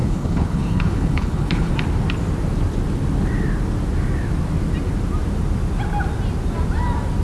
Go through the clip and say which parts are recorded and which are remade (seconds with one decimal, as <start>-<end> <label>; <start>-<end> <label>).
0.0-1.7 remade; 1.7-7.2 recorded